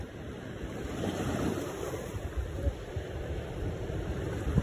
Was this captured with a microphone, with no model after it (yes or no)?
no